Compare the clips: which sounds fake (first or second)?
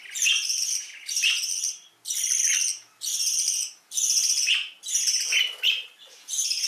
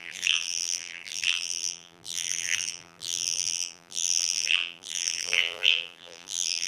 second